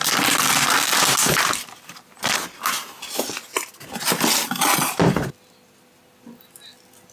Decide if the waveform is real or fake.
real